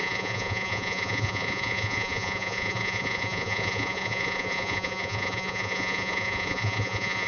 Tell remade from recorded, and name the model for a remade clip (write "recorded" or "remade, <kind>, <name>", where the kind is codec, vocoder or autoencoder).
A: remade, vocoder, Vocos